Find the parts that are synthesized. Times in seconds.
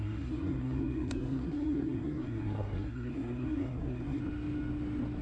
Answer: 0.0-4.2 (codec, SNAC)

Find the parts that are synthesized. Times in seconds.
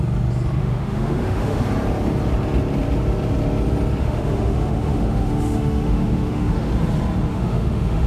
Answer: 0.6-1.6 (autoencoder, DAC-VAE); 4.0-6.7; 7.3-8.1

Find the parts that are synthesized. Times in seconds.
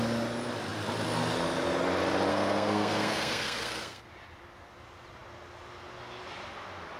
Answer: 2.3-4.0 (codec, SNAC)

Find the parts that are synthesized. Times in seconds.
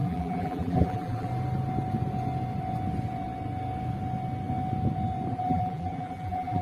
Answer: 0.0-1.3 (vocoder, BigVGAN v2); 5.3-6.6